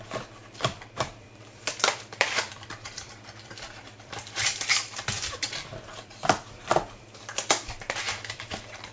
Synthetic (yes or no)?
yes